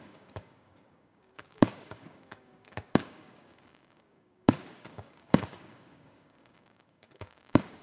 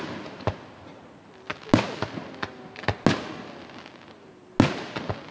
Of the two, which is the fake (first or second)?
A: first